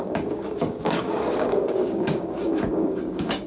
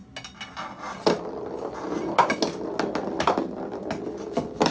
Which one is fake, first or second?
first